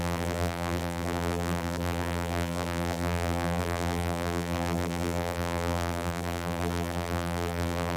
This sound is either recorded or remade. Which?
remade